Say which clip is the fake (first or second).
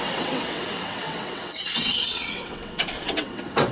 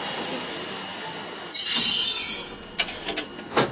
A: first